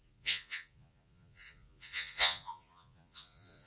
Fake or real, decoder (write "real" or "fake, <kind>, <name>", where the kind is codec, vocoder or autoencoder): fake, vocoder, Vocos